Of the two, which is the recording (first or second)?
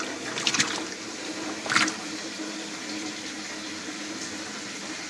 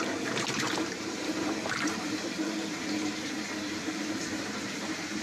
first